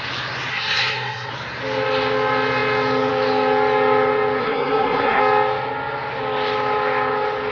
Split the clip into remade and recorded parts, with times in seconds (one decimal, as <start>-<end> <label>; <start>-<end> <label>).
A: 0.0-0.5 recorded; 0.5-1.3 remade; 1.3-4.4 recorded; 4.4-5.2 remade; 5.2-7.5 recorded